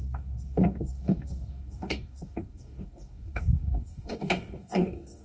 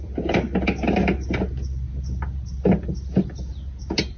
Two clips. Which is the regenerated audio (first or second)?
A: first